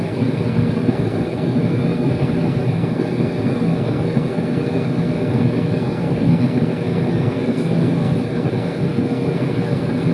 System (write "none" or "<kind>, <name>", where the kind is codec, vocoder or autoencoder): codec, SNAC